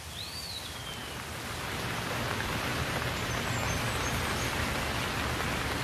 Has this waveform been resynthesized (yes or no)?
no